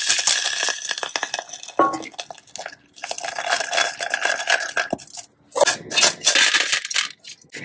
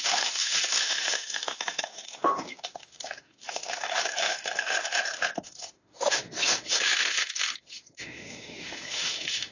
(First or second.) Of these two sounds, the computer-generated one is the second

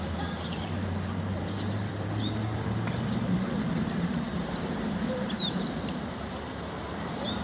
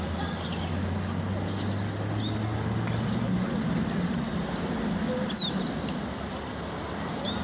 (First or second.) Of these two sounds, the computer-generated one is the first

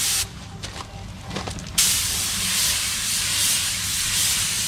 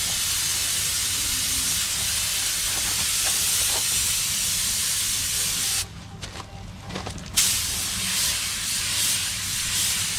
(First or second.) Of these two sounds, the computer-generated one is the first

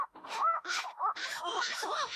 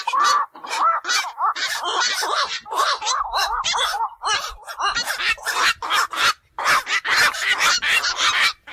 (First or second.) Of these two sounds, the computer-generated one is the first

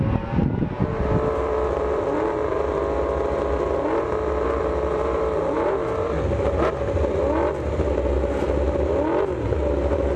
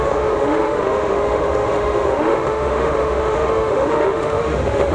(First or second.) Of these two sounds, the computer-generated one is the second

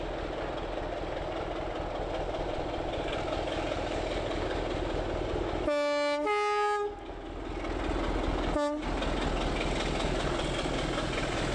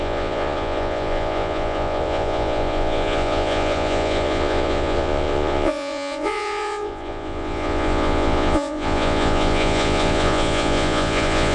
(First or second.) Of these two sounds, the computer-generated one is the second